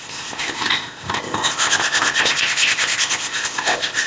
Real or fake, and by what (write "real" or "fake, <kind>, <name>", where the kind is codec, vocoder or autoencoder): fake, codec, ZipCodec